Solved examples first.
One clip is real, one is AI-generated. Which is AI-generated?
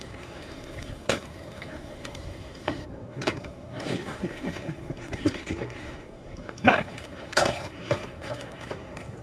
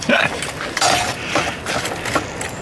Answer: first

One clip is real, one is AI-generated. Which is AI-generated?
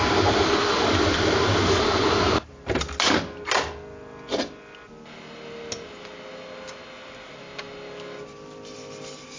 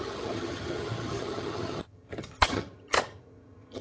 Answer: second